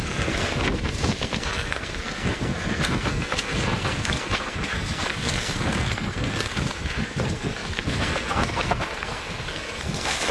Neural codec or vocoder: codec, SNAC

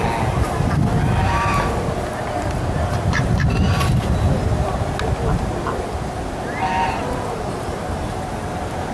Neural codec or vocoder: none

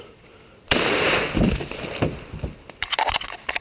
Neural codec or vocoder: none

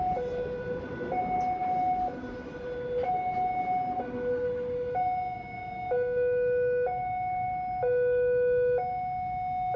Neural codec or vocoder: none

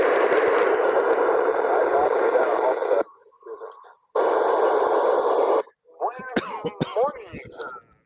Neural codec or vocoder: none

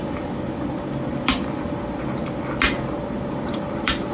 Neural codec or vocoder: none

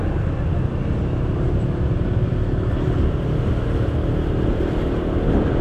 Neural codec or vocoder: none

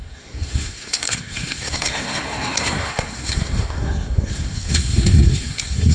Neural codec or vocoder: codec, SNAC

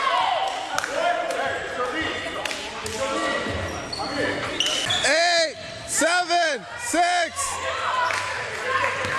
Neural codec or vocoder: none